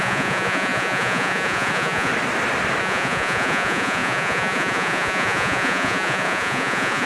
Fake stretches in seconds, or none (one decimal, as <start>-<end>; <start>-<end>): 0.0-2.1; 2.8-7.1